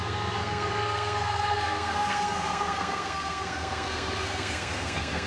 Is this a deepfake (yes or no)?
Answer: yes